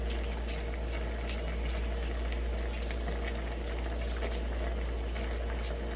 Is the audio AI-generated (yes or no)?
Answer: no